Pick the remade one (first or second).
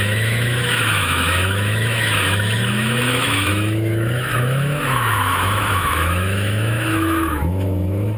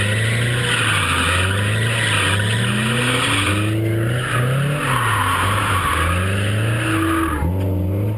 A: first